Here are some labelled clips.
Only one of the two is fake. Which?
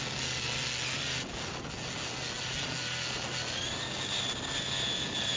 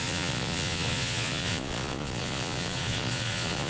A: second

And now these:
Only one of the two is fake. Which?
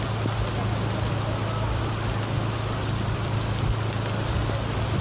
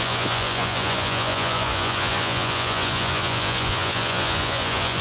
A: second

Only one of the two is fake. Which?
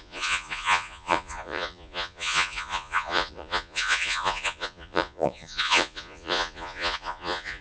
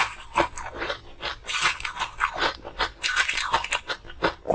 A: first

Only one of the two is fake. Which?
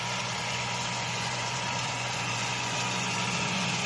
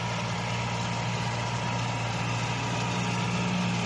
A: first